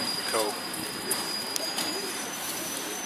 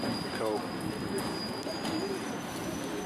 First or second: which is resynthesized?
first